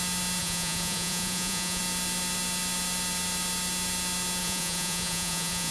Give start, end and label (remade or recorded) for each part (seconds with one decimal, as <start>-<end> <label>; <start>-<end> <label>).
0.0-0.4 recorded; 0.4-1.8 remade; 1.8-4.4 recorded; 4.4-5.7 remade